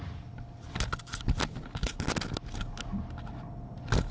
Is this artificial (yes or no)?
no